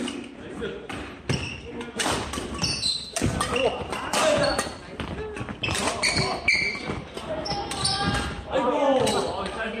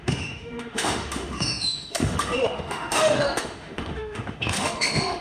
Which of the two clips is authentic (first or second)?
first